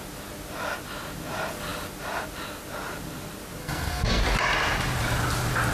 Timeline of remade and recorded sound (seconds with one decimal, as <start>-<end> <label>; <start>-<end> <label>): 0.0-3.6 recorded; 3.6-4.2 remade; 4.2-5.7 recorded